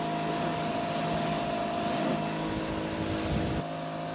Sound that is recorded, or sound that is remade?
recorded